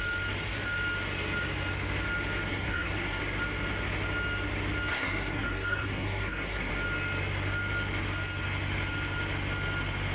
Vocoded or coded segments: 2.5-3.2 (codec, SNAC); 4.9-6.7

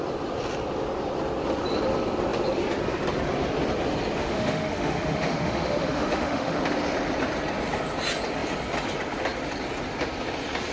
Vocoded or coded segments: 4.2-6.6 (autoencoder, DAC-VAE)

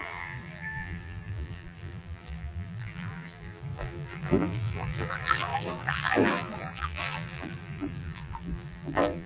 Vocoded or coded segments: 0.0-9.3 (vocoder, BigVGAN v2)

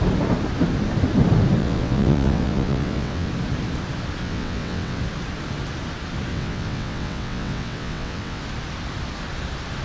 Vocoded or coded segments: 1.6-3.3 (vocoder, WaveNeXt); 4.2-5.0; 6.3-8.4

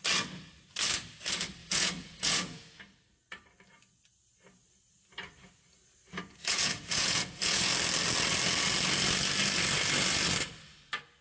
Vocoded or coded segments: 1.6-2.8 (vocoder, Vocos); 6.4-7.7

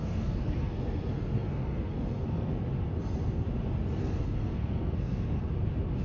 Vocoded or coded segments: 0.0-2.5 (codec, SNAC); 4.0-5.4